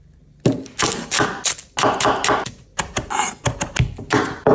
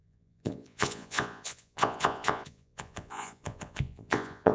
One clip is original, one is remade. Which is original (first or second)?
first